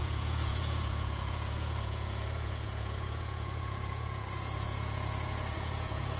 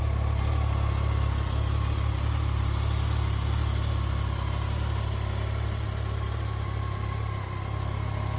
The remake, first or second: first